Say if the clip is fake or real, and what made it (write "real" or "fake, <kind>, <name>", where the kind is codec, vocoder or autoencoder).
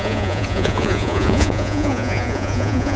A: fake, vocoder, Vocos